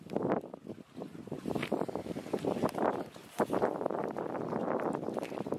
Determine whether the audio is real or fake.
real